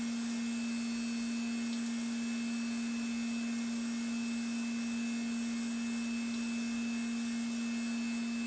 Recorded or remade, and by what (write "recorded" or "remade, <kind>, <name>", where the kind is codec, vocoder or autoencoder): recorded